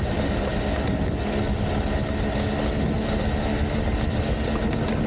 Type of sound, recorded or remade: recorded